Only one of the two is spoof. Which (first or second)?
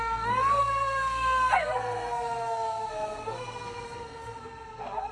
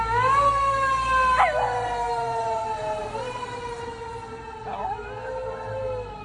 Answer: first